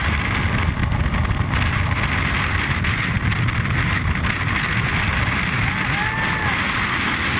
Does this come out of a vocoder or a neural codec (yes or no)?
no